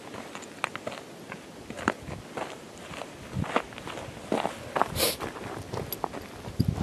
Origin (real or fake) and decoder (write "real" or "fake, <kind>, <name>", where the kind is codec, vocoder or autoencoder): real